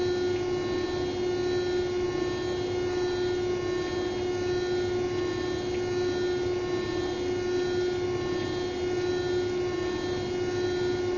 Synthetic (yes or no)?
no